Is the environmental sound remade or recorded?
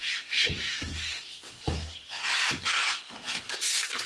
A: remade